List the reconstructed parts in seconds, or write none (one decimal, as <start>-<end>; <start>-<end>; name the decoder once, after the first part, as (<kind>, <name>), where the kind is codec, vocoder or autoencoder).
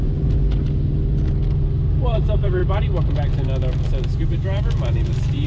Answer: 0.0-0.4 (vocoder, BigVGAN v2); 1.9-2.6; 4.0-5.5